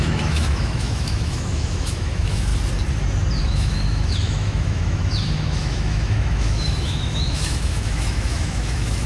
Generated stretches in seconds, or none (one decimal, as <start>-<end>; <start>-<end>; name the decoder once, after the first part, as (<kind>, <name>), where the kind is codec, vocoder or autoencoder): 0.0-2.5 (autoencoder, DAC-VAE); 3.4-9.1